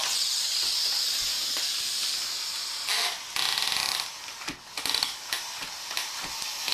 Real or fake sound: real